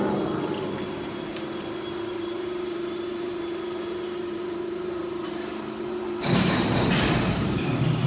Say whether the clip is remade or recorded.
remade